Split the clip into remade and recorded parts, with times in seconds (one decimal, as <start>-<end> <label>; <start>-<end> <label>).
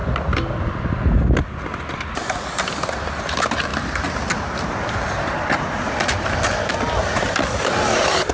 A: 0.0-8.3 recorded